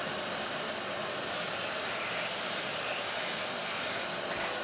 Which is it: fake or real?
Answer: real